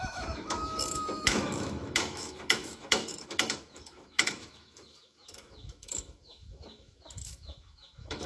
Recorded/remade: remade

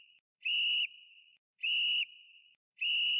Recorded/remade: remade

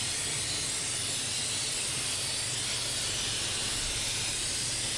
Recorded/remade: recorded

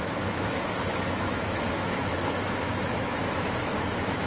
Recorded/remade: remade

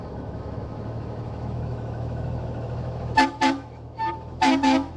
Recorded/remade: remade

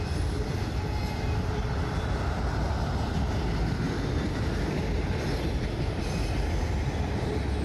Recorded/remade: recorded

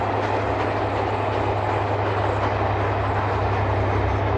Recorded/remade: recorded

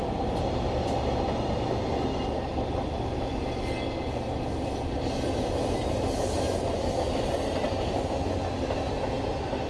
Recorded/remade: recorded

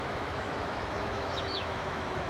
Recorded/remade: remade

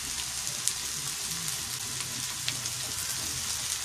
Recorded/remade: recorded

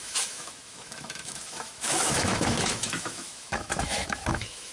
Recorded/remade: remade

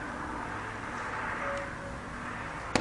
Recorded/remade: recorded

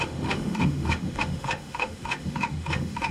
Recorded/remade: remade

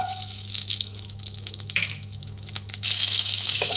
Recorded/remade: remade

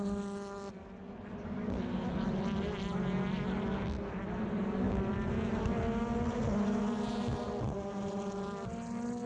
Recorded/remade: recorded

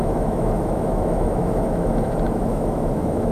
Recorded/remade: remade